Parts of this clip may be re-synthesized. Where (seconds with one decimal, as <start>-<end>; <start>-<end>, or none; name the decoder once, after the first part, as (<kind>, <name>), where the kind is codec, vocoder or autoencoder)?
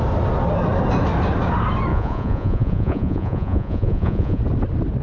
1.9-4.4 (vocoder, Vocos)